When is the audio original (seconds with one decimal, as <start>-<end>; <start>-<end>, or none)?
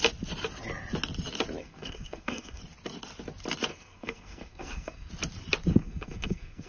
0.0-1.6; 2.6-3.7; 5.1-5.7